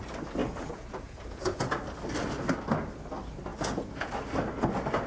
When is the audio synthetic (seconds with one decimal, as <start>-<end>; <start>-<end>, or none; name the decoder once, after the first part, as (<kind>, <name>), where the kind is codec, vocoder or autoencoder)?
0.4-1.7 (vocoder, Vocos); 3.5-4.1